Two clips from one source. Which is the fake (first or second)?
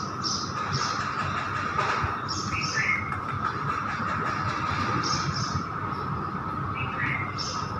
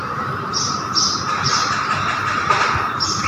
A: second